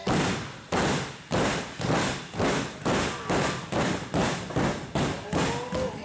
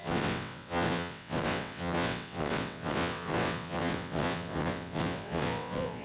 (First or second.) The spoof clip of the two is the second